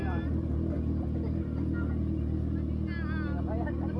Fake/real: real